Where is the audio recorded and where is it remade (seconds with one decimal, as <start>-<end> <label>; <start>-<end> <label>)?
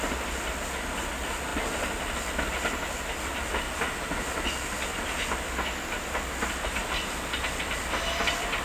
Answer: 0.0-8.6 recorded